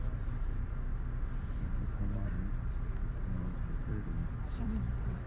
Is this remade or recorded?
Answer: remade